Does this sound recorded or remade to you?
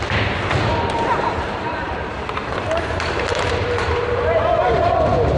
remade